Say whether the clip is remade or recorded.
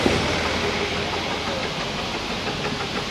recorded